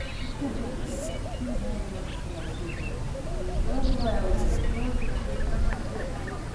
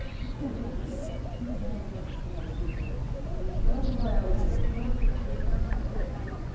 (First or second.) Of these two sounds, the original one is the first